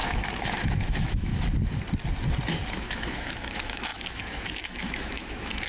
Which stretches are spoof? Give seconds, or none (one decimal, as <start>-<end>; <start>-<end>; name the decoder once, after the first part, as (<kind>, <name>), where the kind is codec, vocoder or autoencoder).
0.0-1.3 (autoencoder, DAC-VAE); 2.7-5.7